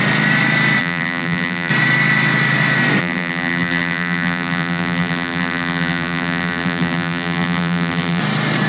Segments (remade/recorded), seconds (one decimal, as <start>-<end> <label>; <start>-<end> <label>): 0.0-0.8 recorded; 0.8-1.7 remade; 1.7-3.0 recorded; 3.0-8.2 remade; 8.2-8.7 recorded